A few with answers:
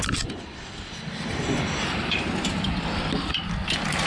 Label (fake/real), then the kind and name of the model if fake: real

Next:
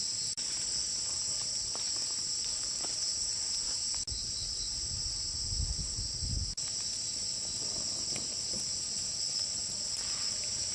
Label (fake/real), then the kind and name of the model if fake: real